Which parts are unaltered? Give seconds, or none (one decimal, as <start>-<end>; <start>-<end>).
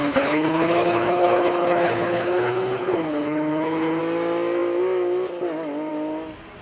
4.0-6.6